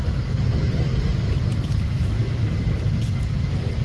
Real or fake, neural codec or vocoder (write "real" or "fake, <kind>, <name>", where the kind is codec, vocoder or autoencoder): real